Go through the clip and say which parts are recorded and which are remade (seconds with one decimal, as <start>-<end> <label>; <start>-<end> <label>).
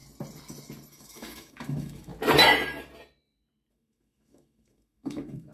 0.0-0.9 recorded; 0.9-2.1 remade; 2.1-3.7 recorded; 3.7-5.5 remade